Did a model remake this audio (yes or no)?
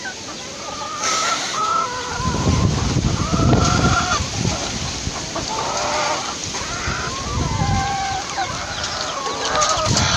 no